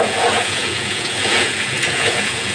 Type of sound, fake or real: fake